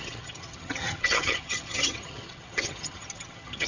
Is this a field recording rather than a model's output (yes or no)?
no